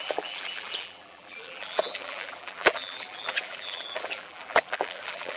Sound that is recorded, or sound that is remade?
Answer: remade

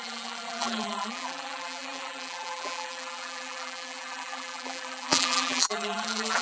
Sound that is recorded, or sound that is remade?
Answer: remade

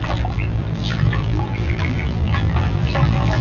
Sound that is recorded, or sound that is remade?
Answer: remade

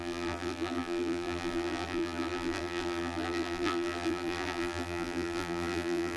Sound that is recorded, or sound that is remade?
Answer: remade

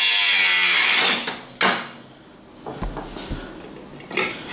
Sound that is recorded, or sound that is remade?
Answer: recorded